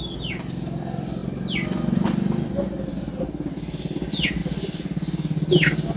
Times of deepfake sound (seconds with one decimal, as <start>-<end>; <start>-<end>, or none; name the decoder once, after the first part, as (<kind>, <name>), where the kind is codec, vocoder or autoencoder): none